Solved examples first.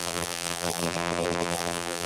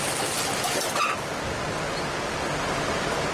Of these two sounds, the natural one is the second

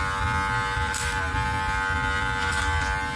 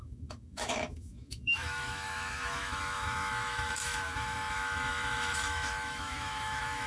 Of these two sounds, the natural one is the first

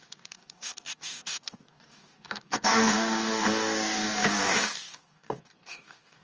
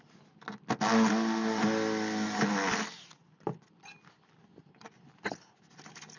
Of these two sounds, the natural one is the second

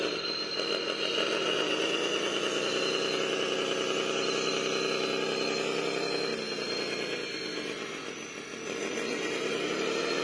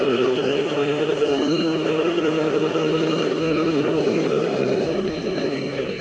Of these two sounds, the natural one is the first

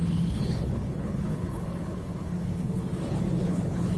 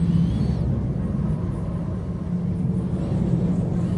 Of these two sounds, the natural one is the second